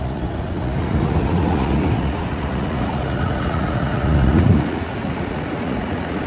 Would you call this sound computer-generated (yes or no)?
yes